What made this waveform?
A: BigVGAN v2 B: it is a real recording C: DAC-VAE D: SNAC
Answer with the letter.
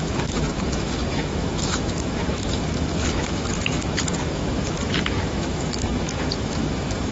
C